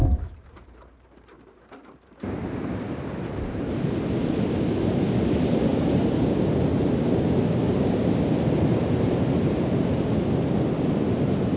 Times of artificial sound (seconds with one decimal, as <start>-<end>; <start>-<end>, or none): 0.0-3.7